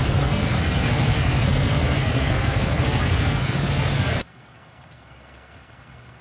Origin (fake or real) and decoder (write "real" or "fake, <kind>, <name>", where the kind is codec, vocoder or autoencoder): fake, codec, SNAC